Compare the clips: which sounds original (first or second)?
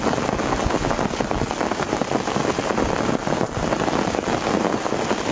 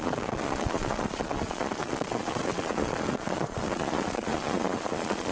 first